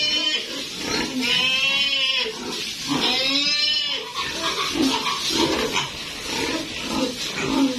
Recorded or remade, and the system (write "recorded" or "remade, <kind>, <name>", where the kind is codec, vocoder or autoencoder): recorded